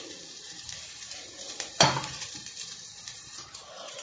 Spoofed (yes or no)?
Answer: yes